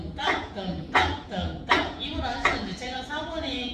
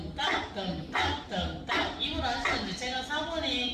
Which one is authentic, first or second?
second